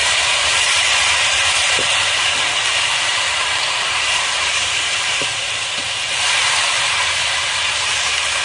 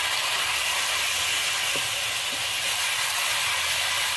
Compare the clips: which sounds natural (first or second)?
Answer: second